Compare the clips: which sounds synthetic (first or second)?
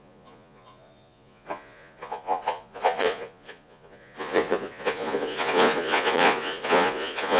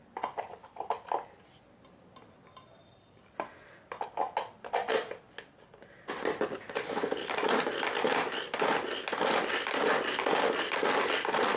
first